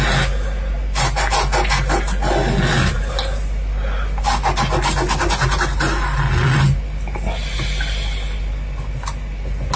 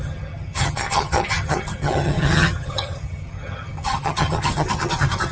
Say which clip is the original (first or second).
first